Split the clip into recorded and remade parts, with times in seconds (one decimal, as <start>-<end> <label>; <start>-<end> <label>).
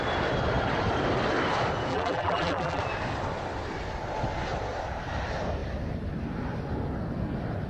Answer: 0.0-1.9 recorded; 1.9-2.8 remade; 2.8-7.7 recorded